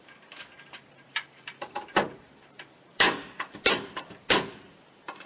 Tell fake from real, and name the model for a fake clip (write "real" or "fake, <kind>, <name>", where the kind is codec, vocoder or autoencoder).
fake, vocoder, BigVGAN v2